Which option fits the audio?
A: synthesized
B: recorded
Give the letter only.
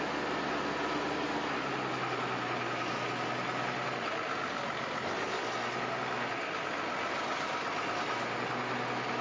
B